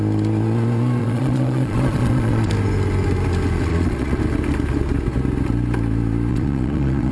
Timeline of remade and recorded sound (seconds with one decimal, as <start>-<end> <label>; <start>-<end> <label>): 0.0-1.0 recorded; 1.0-2.5 remade; 2.5-3.7 recorded; 3.7-4.2 remade; 4.2-6.3 recorded; 6.3-7.1 remade